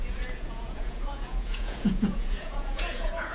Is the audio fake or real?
fake